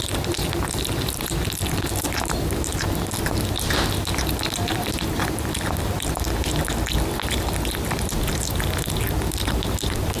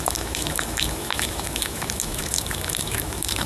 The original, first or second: first